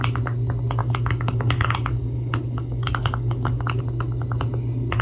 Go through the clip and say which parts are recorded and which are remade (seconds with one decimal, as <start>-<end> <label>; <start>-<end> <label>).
0.0-0.8 recorded; 0.8-3.8 remade; 3.8-5.0 recorded

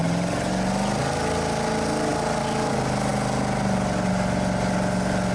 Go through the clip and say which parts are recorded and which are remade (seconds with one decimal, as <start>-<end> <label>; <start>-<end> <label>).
0.0-5.3 recorded

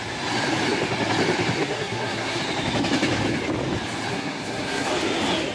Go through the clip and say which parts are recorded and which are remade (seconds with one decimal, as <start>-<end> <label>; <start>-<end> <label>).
0.0-1.6 recorded; 1.6-2.4 remade; 2.4-4.1 recorded; 4.1-4.9 remade; 4.9-5.5 recorded

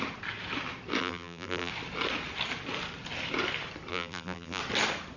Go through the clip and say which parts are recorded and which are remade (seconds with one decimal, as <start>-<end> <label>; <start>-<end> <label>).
0.0-1.0 recorded; 1.0-1.7 remade; 1.7-3.9 recorded; 3.9-4.6 remade; 4.6-5.2 recorded

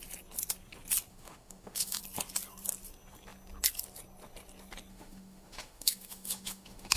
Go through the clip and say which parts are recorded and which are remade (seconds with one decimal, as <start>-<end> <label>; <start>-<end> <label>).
0.0-1.1 recorded; 1.1-2.0 remade; 2.0-4.9 recorded; 4.9-7.0 remade

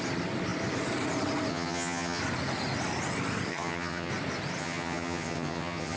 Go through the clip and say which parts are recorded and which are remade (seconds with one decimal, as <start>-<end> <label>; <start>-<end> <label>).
0.0-1.5 recorded; 1.5-2.2 remade; 2.2-3.5 recorded; 3.5-4.1 remade; 4.1-4.6 recorded; 4.6-6.0 remade

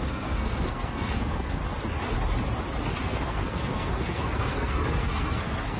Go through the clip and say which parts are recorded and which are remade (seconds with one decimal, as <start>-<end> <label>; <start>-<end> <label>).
0.0-1.6 remade; 1.6-2.9 recorded; 2.9-5.8 remade

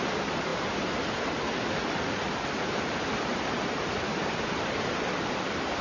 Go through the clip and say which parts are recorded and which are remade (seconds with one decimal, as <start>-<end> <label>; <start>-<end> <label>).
0.0-3.3 recorded; 3.3-5.1 remade; 5.1-5.8 recorded